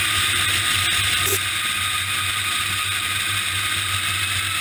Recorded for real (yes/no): yes